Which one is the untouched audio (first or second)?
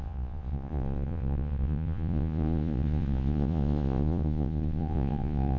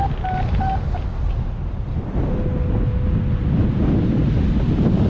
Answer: second